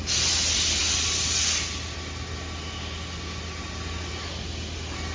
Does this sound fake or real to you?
real